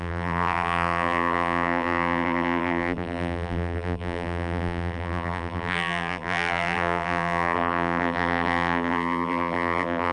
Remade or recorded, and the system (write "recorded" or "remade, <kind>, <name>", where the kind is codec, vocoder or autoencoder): remade, vocoder, BigVGAN v2